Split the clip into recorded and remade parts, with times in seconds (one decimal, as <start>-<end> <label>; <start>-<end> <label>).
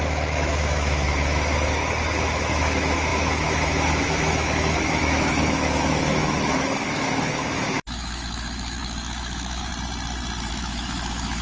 0.0-9.7 remade; 9.7-10.5 recorded; 10.5-11.4 remade